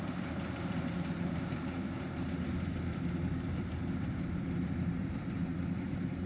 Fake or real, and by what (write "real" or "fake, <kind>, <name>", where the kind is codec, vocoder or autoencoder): fake, vocoder, BigVGAN v2